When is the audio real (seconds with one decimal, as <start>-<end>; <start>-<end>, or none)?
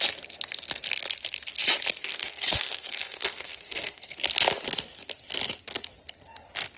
0.0-2.0; 4.2-6.8